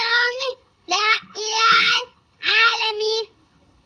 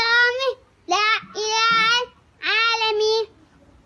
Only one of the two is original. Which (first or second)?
second